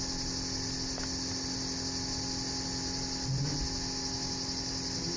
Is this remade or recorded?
recorded